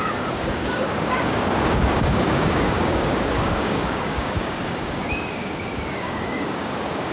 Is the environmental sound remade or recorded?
remade